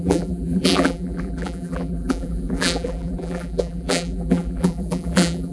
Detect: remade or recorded remade